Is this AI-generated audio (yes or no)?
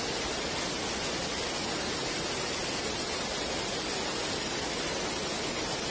no